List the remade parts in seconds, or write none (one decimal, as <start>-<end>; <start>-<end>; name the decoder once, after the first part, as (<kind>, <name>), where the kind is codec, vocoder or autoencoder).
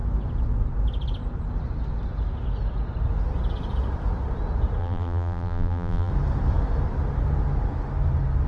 4.8-6.1 (vocoder, BigVGAN v2)